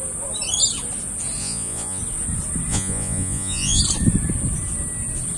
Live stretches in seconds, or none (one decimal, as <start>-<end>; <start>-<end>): 0.0-1.4; 2.0-2.7; 3.8-5.4